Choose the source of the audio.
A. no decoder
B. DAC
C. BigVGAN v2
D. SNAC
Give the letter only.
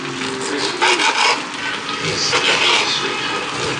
A